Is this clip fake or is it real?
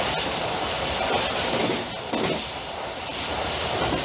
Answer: real